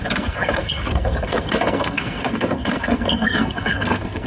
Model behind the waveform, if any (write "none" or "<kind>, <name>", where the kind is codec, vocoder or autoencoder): codec, SNAC